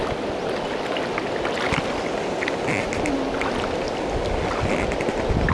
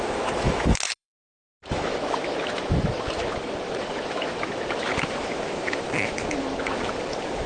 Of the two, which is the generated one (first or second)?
second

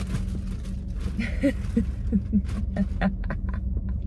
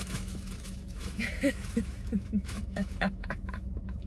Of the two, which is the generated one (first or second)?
second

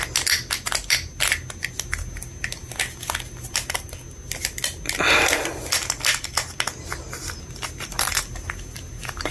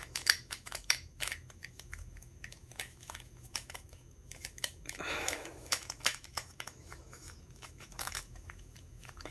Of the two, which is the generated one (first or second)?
second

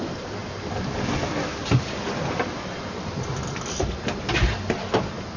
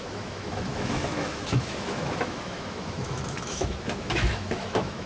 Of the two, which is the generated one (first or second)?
second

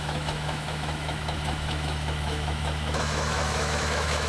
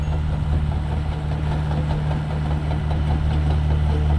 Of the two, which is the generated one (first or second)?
first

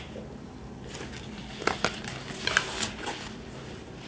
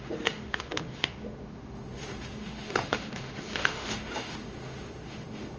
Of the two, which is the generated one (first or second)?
second